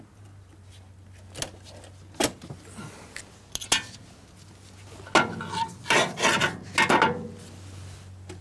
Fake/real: real